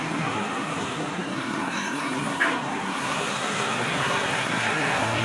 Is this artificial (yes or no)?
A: yes